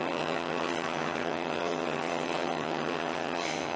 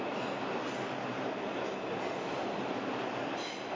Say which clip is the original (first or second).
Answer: second